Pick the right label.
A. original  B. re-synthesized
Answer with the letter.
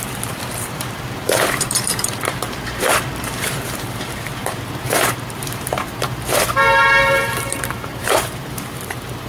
B